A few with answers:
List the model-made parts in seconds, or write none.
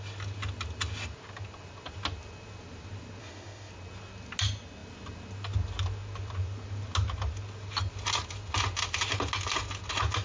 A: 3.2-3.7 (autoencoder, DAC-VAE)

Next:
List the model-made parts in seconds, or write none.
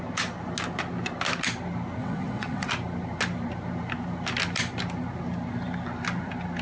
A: 2.0-2.7 (vocoder, WaveNeXt)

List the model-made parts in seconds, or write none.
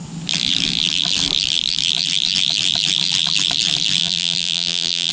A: 4.0-5.1 (vocoder, BigVGAN v2)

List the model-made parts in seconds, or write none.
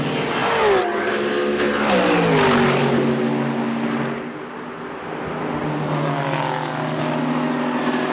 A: none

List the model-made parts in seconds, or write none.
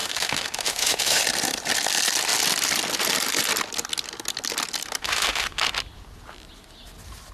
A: 0.0-1.2 (autoencoder, DAC-VAE); 5.0-5.6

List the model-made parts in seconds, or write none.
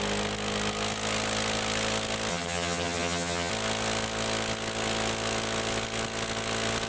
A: 2.3-3.5 (vocoder, HiFi-GAN)